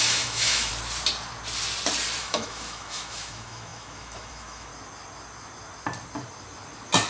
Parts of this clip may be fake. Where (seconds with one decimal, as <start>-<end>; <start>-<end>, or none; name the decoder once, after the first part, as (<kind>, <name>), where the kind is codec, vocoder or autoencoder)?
0.0-0.7 (autoencoder, DAC-VAE); 2.2-4.7